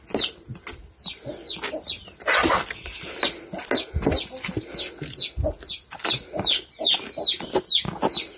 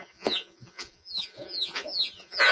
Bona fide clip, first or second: first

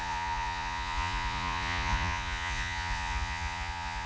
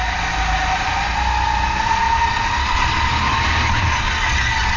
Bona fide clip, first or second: second